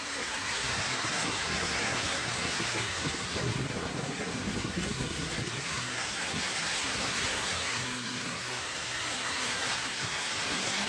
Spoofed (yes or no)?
yes